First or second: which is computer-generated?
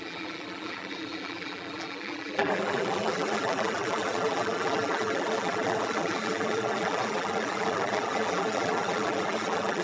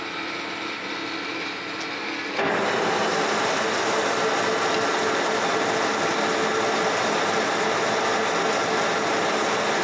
first